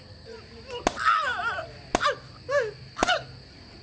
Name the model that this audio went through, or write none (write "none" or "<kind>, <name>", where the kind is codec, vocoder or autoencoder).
none